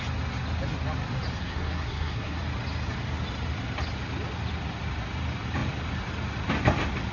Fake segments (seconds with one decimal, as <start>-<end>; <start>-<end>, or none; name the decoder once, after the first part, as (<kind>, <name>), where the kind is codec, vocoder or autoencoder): 1.4-2.4 (codec, SNAC)